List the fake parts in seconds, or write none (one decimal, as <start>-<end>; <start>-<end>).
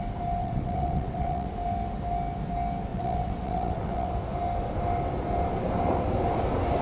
0.4-1.5; 2.9-4.1